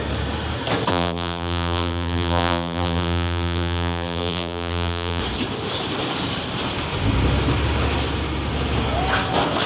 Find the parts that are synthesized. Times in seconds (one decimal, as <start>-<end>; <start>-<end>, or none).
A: 0.9-5.2